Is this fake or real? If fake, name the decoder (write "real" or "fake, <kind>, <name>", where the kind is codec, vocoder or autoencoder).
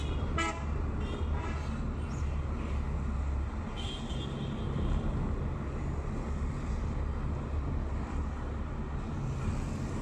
real